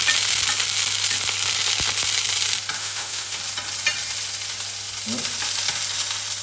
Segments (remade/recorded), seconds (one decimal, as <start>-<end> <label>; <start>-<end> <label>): 0.0-2.8 recorded; 2.8-3.4 remade; 3.4-6.4 recorded

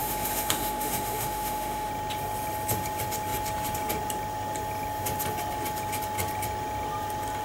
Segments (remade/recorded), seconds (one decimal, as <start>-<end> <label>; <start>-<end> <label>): 0.0-1.9 remade; 1.9-7.4 recorded

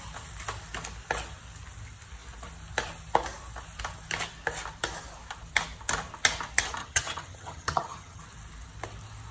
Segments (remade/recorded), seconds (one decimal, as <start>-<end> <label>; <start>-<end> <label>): 0.0-6.8 recorded; 6.8-8.2 remade; 8.2-9.3 recorded

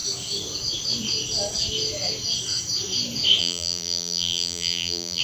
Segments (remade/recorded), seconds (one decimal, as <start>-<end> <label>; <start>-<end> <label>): 0.0-3.4 recorded; 3.4-5.2 remade

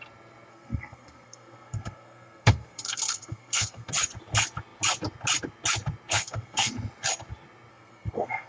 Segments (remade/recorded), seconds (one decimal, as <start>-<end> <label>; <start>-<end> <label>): 0.0-0.5 recorded; 0.5-3.9 remade; 3.9-6.1 recorded; 6.1-6.7 remade; 6.7-7.7 recorded; 7.7-8.5 remade

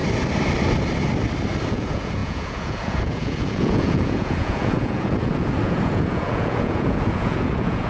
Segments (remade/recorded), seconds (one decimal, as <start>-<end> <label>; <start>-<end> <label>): 0.0-1.7 recorded; 1.7-7.9 remade